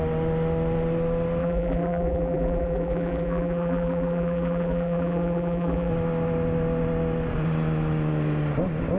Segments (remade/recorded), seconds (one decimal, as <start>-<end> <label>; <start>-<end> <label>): 0.0-1.4 recorded; 1.4-5.9 remade; 5.9-9.0 recorded